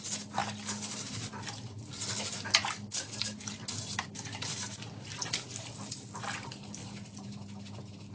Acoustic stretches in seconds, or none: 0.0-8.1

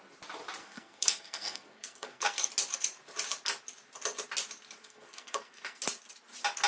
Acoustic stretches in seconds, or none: 0.0-0.6; 2.5-4.8; 5.8-6.7

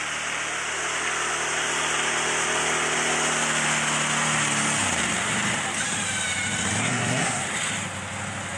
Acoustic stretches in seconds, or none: 0.0-6.8; 7.4-8.6

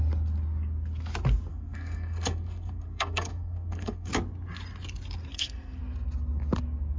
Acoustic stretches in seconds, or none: 0.0-1.5; 4.1-5.3; 5.8-7.0